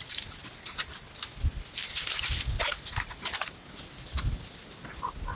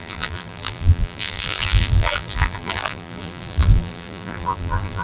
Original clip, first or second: first